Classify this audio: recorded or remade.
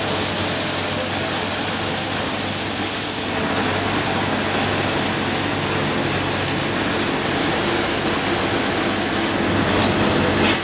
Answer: recorded